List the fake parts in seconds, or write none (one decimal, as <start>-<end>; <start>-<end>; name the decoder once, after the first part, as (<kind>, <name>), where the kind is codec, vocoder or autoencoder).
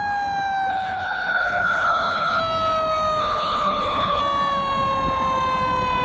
0.7-2.4 (codec, HILCodec); 3.2-4.2